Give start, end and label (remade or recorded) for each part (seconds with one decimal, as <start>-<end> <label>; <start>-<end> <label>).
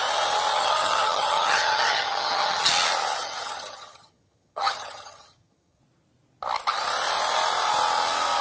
0.0-0.5 recorded; 0.5-2.7 remade; 2.7-3.2 recorded; 3.2-5.8 remade; 5.8-8.4 recorded